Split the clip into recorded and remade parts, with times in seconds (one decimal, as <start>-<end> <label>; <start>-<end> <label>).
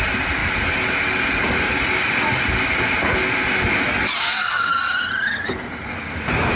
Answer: 0.0-4.2 recorded; 4.2-4.7 remade; 4.7-6.6 recorded